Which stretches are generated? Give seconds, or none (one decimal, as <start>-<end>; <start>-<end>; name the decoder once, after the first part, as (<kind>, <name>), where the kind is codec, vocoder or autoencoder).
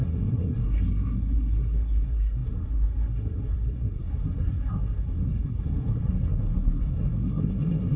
0.0-8.0 (codec, SNAC)